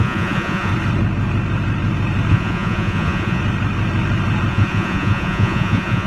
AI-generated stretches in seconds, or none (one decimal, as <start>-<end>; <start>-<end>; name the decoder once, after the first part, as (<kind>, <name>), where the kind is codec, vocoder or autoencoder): 0.0-0.7 (vocoder, Vocos); 2.3-3.4; 4.5-6.1